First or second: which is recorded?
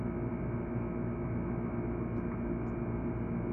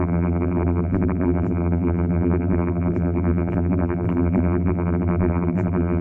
first